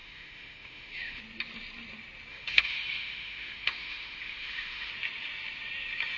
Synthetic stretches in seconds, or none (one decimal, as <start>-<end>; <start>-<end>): 0.0-1.2; 2.3-4.9